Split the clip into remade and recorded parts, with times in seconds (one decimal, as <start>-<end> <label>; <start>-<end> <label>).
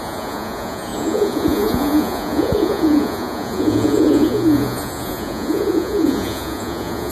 0.0-7.1 remade